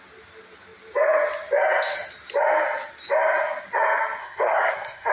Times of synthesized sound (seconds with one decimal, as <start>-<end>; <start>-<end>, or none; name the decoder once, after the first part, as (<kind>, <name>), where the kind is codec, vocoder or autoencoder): 4.2-5.1 (codec, SNAC)